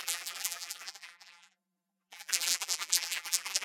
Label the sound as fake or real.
fake